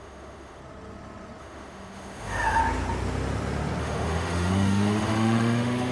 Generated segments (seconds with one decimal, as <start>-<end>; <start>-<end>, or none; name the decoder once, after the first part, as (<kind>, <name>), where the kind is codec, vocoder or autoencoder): 0.0-0.6 (autoencoder, DAC-VAE); 1.4-2.6; 3.8-5.9